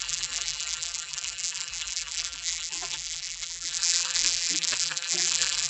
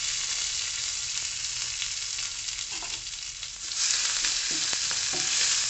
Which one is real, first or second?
second